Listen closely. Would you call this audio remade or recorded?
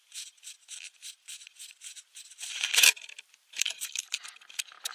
remade